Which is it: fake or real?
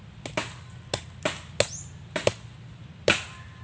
real